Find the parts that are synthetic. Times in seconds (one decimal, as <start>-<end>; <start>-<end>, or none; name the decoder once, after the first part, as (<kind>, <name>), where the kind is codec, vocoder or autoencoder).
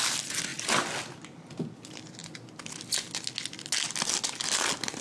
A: none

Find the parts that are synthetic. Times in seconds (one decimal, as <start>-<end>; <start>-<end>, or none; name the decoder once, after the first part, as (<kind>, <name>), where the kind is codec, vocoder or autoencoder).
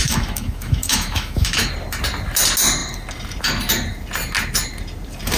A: 0.0-1.7 (autoencoder, DAC-VAE)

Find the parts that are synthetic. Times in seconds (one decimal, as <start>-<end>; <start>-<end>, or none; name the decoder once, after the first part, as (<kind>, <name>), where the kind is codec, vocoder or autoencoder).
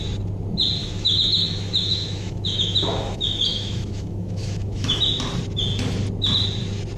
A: 0.8-5.0 (autoencoder, DAC-VAE)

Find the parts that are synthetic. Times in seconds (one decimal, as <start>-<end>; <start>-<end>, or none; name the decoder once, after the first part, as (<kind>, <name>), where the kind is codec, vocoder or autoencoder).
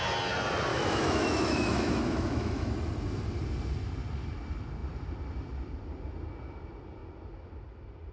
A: 0.7-2.7 (autoencoder, DAC-VAE)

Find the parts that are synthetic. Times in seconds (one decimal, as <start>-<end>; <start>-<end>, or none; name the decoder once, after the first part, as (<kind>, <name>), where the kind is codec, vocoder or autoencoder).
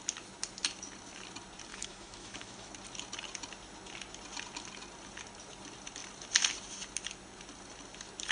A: 1.7-2.7 (autoencoder, DAC-VAE)